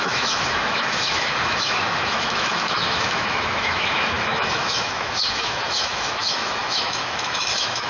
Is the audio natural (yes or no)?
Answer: no